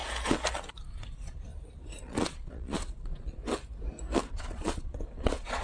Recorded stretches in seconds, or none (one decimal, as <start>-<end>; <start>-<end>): 0.0-1.1; 1.5-2.0; 3.4-4.3